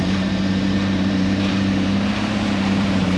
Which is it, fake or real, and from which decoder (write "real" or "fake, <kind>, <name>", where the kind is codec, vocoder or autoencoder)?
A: fake, vocoder, BigVGAN v2